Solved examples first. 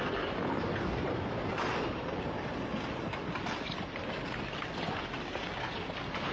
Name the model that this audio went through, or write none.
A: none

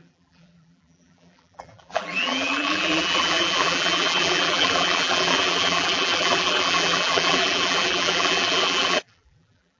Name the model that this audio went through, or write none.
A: vocoder, BigVGAN v2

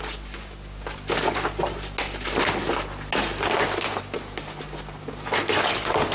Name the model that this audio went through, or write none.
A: none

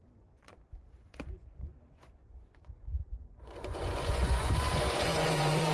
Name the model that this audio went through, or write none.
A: vocoder, Vocos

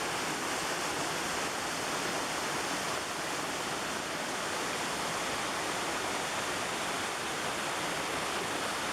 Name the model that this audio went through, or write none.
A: none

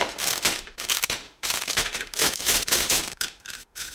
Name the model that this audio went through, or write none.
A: autoencoder, DAC-VAE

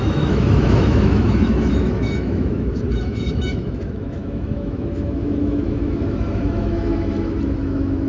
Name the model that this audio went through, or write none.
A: autoencoder, DAC-VAE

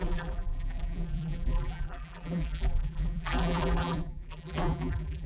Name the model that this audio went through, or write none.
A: vocoder, BigVGAN v2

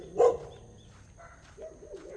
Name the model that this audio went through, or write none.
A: none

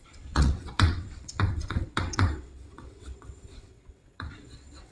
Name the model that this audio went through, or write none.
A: vocoder, WaveNeXt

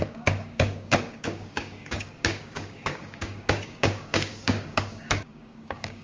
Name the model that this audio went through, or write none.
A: codec, DAC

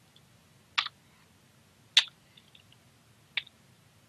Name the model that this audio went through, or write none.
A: none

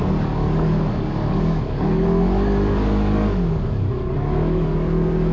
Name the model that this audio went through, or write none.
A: codec, DAC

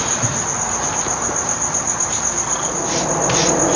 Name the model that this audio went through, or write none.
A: none